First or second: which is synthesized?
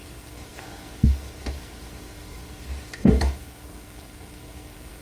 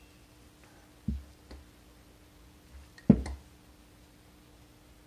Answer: first